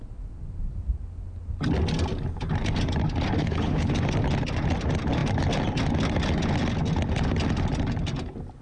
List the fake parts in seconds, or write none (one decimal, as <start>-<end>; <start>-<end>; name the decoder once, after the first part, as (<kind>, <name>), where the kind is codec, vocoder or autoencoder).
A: 3.4-3.9 (codec, HILCodec)